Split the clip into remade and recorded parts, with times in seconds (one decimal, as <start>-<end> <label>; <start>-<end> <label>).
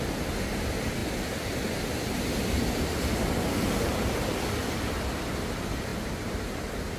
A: 0.0-5.9 recorded; 5.9-7.0 remade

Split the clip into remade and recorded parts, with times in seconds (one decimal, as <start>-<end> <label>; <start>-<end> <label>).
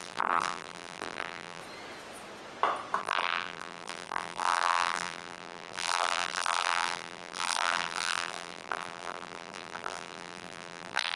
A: 0.0-1.6 remade; 1.6-3.0 recorded; 3.0-11.2 remade